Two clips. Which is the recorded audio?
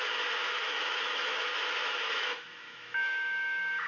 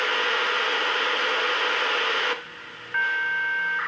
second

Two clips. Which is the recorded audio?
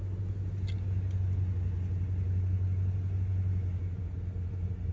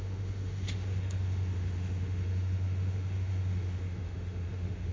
first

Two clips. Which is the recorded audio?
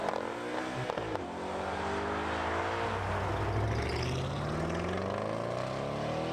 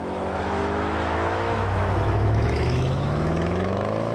first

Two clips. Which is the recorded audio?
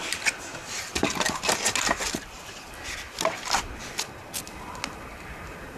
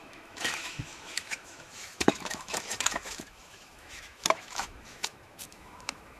first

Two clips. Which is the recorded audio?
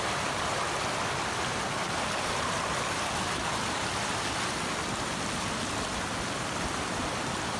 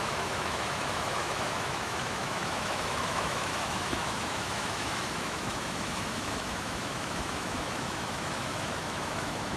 first